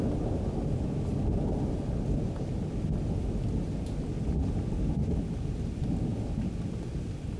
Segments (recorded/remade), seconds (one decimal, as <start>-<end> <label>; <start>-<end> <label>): 0.0-6.1 recorded; 6.1-7.4 remade